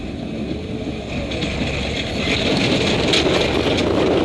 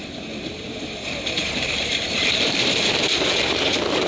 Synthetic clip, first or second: second